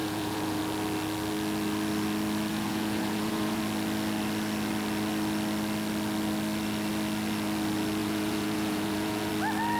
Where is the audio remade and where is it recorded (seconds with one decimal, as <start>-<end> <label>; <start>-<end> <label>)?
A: 0.0-0.6 remade; 0.6-2.5 recorded; 2.5-3.6 remade; 3.6-8.0 recorded; 8.0-9.3 remade; 9.3-9.8 recorded